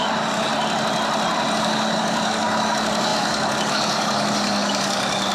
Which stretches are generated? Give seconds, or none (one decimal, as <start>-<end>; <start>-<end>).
0.0-0.5; 1.6-5.3